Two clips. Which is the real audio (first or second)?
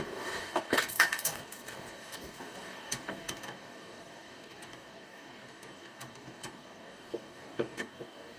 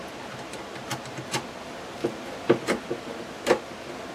second